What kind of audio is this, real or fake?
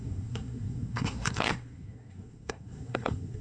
fake